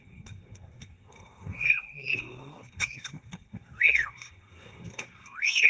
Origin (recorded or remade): remade